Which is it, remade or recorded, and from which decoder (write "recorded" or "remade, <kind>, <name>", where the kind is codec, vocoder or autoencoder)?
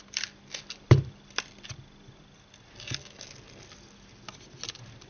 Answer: recorded